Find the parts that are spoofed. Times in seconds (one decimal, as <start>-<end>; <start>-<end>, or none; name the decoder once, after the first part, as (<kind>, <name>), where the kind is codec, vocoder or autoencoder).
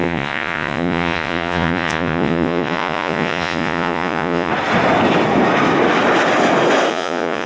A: 0.0-4.5 (vocoder, Vocos); 6.9-7.5